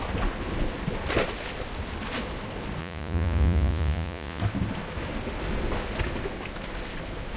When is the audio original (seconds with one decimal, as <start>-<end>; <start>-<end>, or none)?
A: 0.0-2.8; 4.4-7.4